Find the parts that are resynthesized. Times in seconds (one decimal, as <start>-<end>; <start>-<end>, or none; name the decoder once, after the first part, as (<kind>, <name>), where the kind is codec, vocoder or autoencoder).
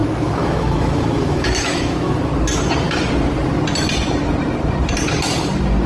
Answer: 0.0-2.3 (autoencoder, DAC-VAE)